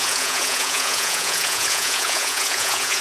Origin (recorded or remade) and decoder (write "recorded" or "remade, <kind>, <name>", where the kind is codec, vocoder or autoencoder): remade, vocoder, Vocos